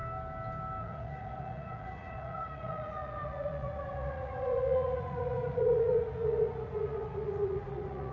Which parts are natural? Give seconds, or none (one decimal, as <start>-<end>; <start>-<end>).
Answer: 0.0-0.8